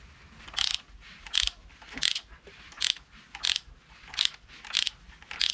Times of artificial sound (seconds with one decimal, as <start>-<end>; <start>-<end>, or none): 1.6-4.9